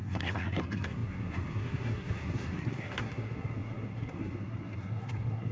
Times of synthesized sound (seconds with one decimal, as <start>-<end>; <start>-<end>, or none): 0.0-5.5